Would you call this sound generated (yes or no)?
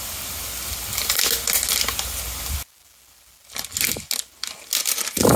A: no